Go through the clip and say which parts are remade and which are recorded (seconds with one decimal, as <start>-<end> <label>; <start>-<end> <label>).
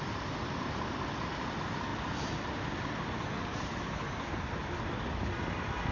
0.0-5.9 recorded